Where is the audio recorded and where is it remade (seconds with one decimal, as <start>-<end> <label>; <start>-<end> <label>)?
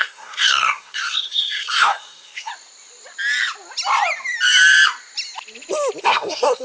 0.0-2.5 remade; 2.5-6.0 recorded; 6.0-6.6 remade